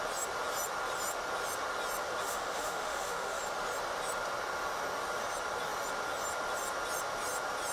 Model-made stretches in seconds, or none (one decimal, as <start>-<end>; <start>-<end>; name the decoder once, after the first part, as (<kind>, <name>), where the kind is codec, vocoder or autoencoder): 2.2-3.4 (autoencoder, DAC-VAE)